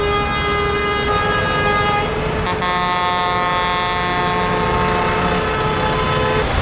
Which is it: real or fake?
real